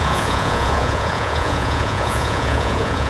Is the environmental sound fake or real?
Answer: fake